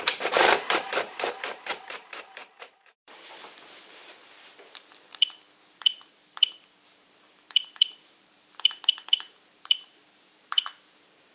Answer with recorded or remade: remade